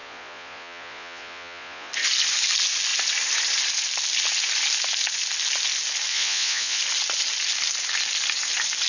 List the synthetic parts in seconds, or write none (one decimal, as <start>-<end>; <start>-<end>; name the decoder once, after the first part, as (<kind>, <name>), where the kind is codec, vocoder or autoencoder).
0.0-1.9 (vocoder, Vocos); 6.1-6.8